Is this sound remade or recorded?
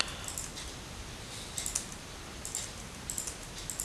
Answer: recorded